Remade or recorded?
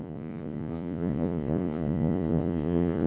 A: remade